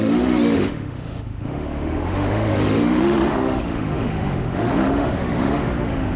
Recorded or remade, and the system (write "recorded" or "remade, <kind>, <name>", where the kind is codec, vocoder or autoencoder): remade, autoencoder, DAC-VAE